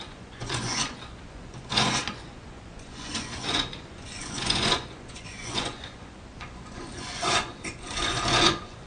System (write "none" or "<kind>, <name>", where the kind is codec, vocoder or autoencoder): vocoder, Vocos